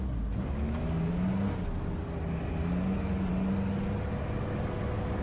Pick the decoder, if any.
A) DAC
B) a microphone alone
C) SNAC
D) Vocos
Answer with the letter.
B